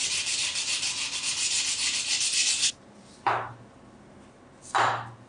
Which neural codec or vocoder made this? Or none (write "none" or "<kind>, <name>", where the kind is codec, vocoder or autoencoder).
none